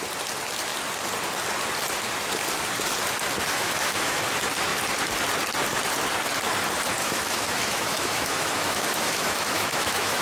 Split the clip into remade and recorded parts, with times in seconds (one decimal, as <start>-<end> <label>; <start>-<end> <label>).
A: 0.0-3.5 recorded; 3.5-4.2 remade; 4.2-7.0 recorded; 7.0-10.2 remade